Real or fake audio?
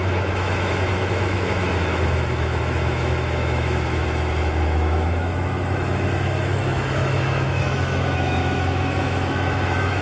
fake